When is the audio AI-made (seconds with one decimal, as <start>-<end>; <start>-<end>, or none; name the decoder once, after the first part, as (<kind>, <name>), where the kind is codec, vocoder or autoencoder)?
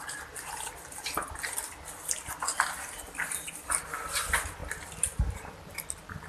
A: none